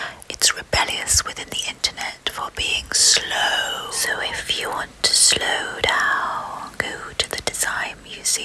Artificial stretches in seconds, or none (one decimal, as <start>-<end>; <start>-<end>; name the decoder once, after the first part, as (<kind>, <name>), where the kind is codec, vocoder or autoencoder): none